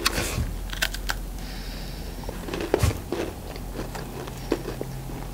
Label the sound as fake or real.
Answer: real